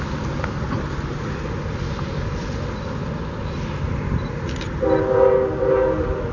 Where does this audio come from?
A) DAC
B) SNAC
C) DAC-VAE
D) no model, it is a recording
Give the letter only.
D